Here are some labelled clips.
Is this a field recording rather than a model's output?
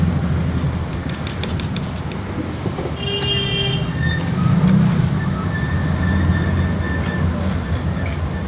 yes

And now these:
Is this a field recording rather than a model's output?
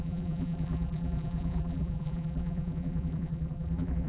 no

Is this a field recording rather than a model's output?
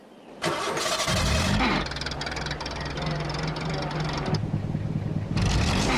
yes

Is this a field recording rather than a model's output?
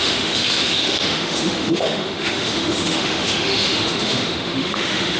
no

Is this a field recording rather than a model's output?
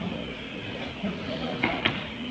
no